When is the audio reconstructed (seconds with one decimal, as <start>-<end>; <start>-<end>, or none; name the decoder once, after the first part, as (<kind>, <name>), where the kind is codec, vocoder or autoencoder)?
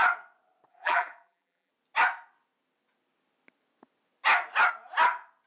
0.7-1.7 (vocoder, BigVGAN v2)